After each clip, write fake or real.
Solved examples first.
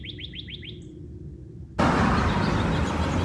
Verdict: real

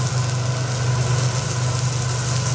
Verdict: real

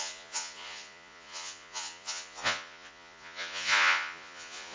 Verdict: fake